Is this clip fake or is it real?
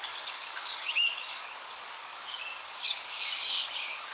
fake